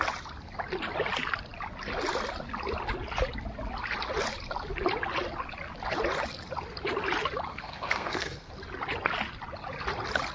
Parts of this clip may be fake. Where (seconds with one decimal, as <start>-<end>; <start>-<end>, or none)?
7.5-8.5